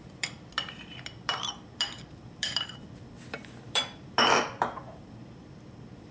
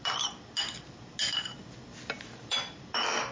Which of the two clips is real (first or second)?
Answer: second